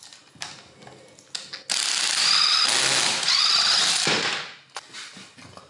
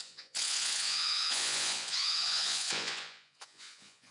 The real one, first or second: first